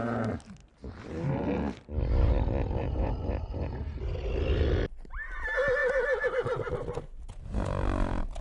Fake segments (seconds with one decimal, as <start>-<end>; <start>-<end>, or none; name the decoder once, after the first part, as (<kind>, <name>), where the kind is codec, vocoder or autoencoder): 2.8-3.7 (vocoder, Vocos)